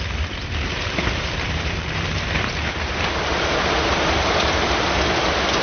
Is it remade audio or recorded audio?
remade